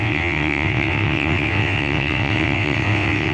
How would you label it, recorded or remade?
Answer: remade